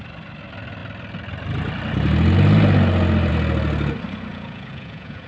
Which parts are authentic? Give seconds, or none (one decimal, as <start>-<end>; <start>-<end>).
0.0-4.3